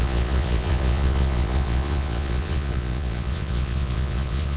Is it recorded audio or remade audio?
remade